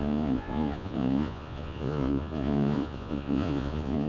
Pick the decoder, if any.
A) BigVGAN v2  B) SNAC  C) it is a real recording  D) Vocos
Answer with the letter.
D